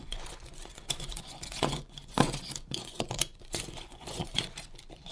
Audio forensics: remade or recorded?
remade